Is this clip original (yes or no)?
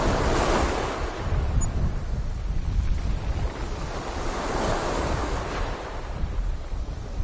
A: yes